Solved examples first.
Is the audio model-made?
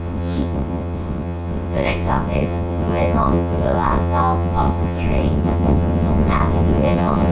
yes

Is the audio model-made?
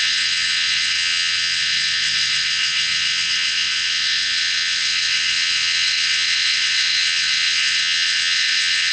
yes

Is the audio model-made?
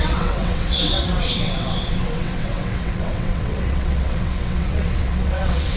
yes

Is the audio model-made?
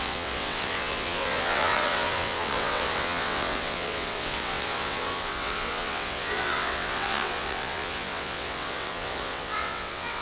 yes